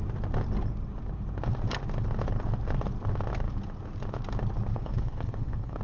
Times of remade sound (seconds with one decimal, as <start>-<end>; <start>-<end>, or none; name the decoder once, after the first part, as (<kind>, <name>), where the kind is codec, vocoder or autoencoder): 4.7-5.8 (codec, HILCodec)